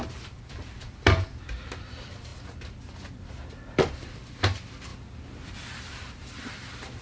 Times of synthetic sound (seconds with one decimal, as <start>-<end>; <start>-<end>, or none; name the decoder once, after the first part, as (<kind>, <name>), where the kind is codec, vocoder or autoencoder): 0.0-4.9 (vocoder, BigVGAN v2); 5.8-7.0